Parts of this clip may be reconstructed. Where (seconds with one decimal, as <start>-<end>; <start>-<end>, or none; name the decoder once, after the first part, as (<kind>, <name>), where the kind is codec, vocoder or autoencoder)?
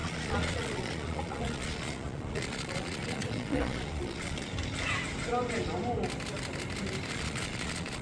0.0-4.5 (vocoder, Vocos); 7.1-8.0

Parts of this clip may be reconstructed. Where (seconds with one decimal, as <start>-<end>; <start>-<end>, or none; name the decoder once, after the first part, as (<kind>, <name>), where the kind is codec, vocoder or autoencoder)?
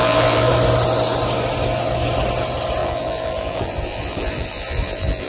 0.0-0.5 (vocoder, BigVGAN v2); 2.8-5.3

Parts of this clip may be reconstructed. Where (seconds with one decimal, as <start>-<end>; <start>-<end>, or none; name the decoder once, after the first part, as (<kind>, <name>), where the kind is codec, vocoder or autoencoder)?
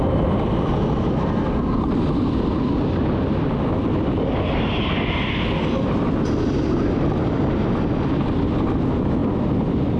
none